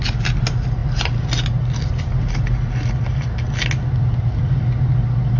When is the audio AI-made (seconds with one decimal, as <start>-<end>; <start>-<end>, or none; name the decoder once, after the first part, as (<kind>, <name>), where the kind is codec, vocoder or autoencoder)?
none

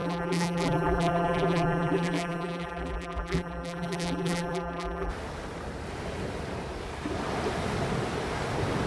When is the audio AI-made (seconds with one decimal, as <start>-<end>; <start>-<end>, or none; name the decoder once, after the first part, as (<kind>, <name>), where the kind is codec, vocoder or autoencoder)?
0.0-5.1 (vocoder, BigVGAN v2)

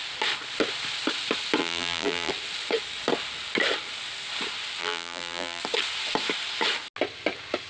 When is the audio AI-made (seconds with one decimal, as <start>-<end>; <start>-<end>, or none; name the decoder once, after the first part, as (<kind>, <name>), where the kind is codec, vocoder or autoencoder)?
1.6-2.3 (vocoder, BigVGAN v2); 4.8-5.6

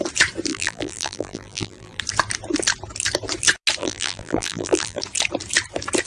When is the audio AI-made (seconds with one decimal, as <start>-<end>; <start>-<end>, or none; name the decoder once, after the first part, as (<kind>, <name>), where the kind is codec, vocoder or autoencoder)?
0.5-2.0 (vocoder, BigVGAN v2); 3.8-5.0

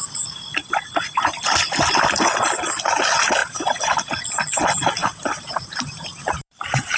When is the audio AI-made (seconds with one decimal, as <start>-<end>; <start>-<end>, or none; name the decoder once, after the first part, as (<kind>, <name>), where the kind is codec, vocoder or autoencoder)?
3.4-4.2 (vocoder, BigVGAN v2); 5.0-7.0